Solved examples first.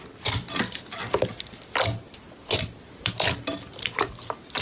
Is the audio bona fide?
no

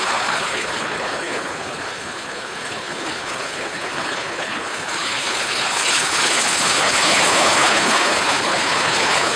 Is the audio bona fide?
no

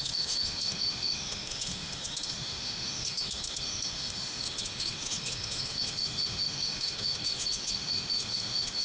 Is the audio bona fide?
no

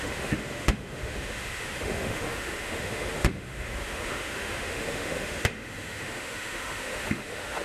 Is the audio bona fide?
no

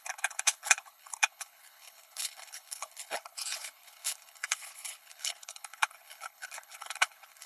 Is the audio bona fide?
no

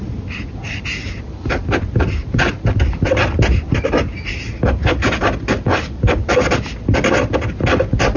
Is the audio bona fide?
yes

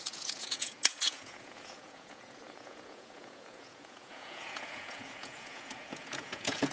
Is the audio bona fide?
no